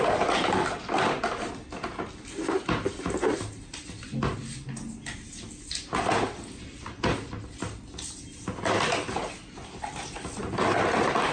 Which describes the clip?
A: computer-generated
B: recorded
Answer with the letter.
B